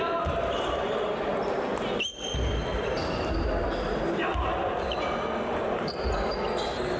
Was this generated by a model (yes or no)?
no